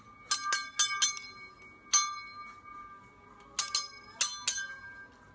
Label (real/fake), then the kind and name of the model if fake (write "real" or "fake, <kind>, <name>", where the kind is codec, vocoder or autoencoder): real